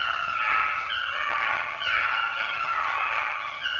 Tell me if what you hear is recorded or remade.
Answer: remade